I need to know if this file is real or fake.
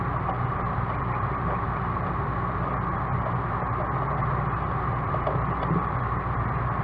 real